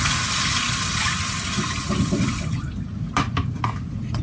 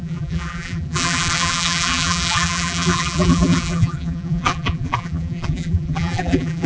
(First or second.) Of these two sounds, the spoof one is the second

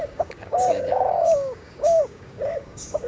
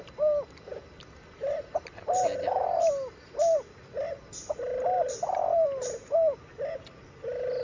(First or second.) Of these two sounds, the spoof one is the first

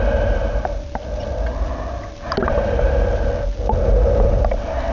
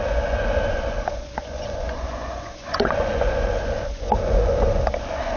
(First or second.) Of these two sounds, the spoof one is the second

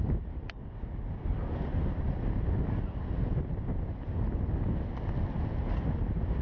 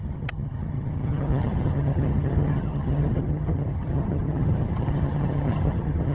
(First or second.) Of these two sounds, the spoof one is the second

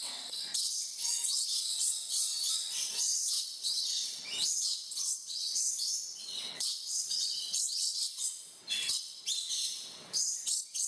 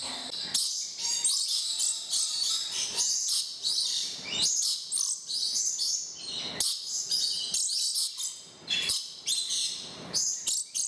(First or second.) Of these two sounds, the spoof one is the first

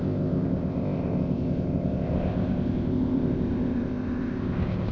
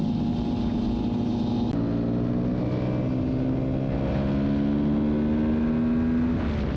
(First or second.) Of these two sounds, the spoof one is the first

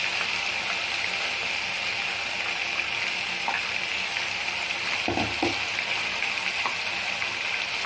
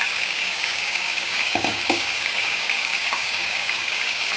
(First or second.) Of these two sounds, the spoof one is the second